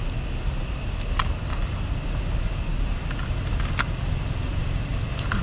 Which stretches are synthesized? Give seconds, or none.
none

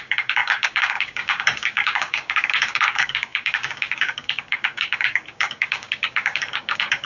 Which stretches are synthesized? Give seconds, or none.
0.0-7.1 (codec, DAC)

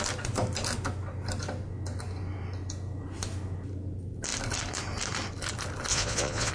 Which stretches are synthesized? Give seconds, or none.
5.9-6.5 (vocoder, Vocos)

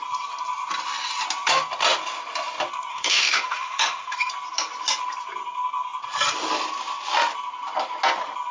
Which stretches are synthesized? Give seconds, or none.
2.9-4.3 (autoencoder, DAC-VAE)

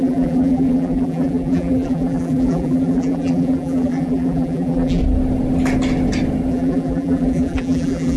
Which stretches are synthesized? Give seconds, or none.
0.0-5.0 (vocoder, BigVGAN v2); 6.5-8.2

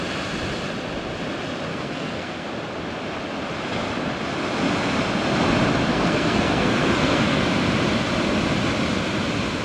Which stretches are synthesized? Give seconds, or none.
1.7-2.5 (codec, SNAC); 5.9-7.4

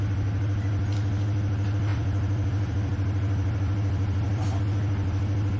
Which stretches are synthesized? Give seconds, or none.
1.9-4.6 (vocoder, BigVGAN v2)